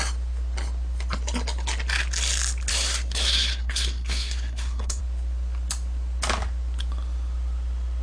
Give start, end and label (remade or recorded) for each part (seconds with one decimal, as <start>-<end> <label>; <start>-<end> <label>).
0.0-2.7 recorded; 2.7-5.0 remade; 5.0-8.0 recorded